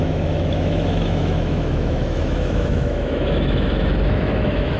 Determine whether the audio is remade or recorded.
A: remade